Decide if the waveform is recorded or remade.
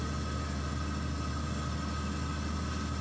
recorded